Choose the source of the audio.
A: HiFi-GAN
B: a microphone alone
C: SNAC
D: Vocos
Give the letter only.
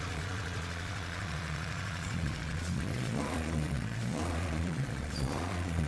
D